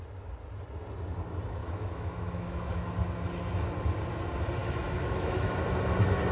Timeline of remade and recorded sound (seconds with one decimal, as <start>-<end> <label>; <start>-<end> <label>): 0.0-1.6 recorded; 1.6-2.9 remade; 2.9-4.6 recorded; 4.6-5.5 remade; 5.5-6.3 recorded